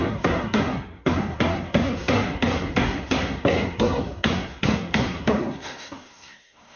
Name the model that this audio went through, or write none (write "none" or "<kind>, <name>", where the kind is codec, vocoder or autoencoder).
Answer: codec, SNAC